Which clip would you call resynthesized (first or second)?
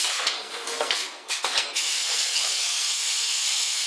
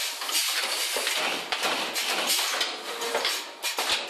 first